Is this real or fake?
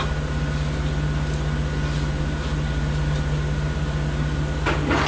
real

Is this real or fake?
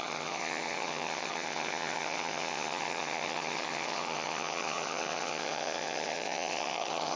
fake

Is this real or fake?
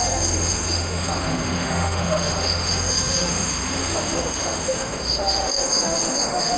fake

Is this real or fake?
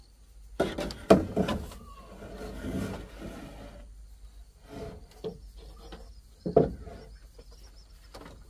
real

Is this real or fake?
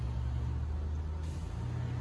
real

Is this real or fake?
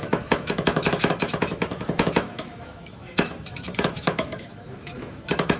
fake